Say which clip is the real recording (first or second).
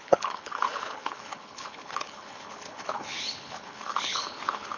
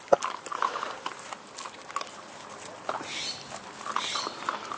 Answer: second